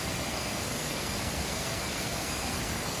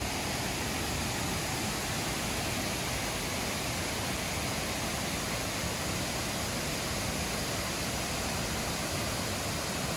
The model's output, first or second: first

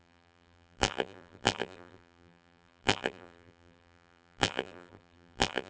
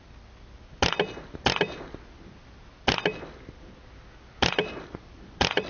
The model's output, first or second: first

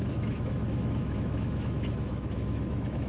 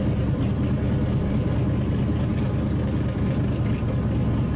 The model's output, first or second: first